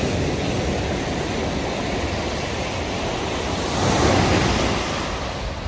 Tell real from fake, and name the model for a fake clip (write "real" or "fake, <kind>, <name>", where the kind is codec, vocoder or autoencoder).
real